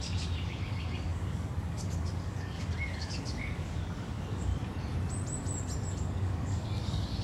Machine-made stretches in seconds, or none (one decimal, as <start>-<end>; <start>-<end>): 0.0-4.5; 6.0-7.2